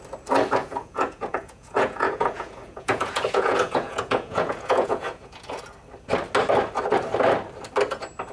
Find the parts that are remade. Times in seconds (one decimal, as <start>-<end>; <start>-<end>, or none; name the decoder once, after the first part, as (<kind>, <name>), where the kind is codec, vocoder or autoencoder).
0.6-5.6 (vocoder, Vocos)